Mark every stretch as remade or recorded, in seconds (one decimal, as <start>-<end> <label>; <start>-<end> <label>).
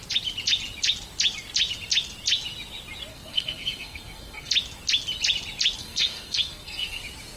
0.0-3.1 recorded; 3.1-4.5 remade; 4.5-5.8 recorded; 5.8-7.0 remade; 7.0-7.4 recorded